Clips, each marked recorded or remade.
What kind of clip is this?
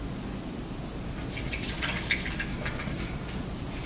recorded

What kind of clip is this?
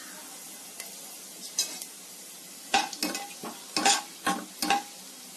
recorded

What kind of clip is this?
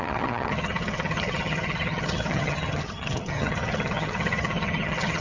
remade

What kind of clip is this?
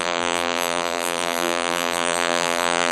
remade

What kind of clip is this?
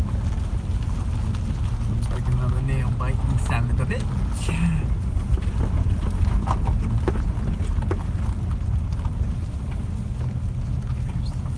recorded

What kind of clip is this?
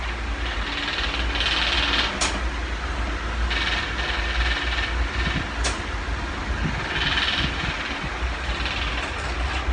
recorded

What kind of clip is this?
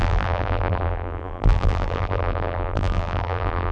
remade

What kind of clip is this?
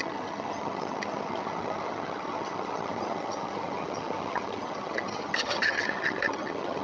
remade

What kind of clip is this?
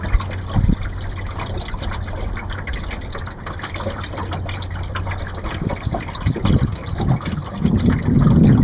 recorded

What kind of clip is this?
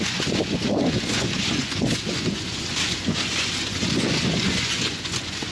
remade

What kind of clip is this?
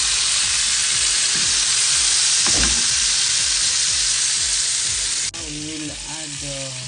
recorded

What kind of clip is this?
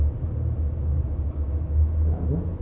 recorded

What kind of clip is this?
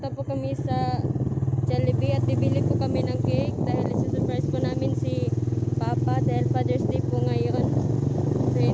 recorded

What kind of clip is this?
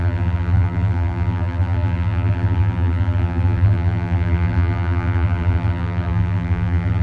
remade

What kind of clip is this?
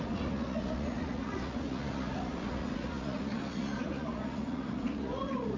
remade